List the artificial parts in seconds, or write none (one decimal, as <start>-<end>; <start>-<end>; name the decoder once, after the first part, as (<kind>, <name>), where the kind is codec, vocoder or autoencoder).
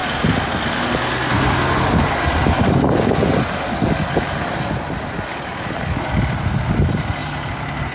none